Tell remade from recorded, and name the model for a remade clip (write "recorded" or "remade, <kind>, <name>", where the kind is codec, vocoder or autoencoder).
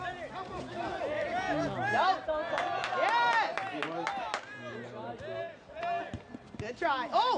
recorded